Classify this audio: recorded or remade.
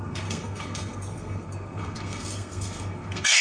remade